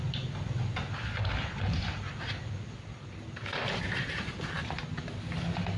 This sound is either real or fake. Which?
real